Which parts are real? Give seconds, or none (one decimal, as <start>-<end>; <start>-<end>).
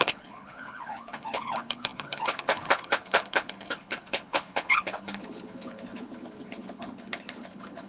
none